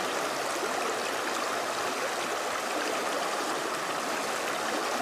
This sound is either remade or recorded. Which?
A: recorded